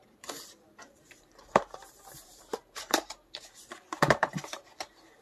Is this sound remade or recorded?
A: remade